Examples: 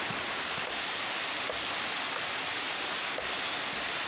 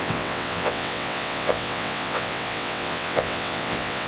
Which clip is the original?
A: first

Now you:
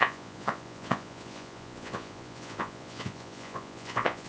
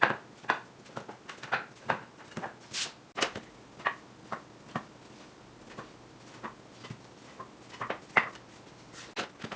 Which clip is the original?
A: second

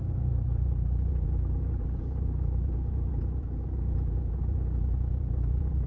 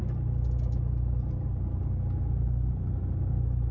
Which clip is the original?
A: second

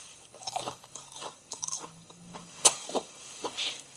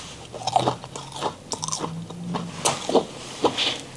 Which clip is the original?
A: second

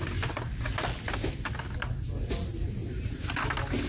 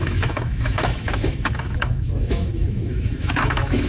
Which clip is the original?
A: first